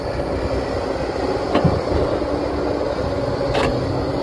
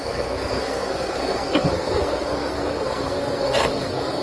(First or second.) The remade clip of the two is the second